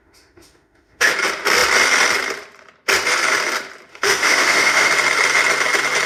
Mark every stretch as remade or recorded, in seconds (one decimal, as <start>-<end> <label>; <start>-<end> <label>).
0.0-1.1 remade; 1.1-3.9 recorded; 3.9-4.9 remade; 4.9-6.1 recorded

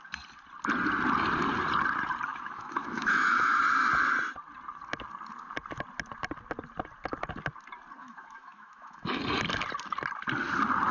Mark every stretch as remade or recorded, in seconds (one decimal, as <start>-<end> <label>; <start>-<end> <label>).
0.0-2.3 recorded; 2.3-3.6 remade; 3.6-8.0 recorded; 8.0-9.2 remade; 9.2-10.9 recorded

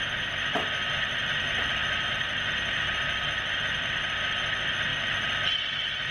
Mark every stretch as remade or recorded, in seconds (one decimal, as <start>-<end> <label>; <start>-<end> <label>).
0.0-6.1 recorded

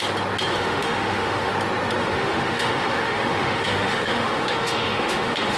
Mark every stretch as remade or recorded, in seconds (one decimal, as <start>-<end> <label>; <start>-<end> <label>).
0.0-0.5 recorded; 0.5-1.5 remade; 1.5-2.0 recorded; 2.0-5.6 remade